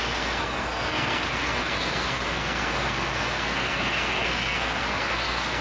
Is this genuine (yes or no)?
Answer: no